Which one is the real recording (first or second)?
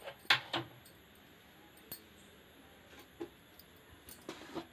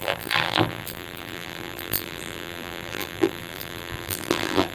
first